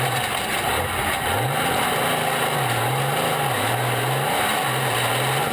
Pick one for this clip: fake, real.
real